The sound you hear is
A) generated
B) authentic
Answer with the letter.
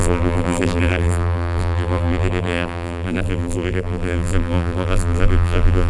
A